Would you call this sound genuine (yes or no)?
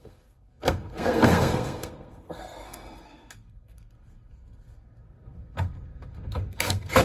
no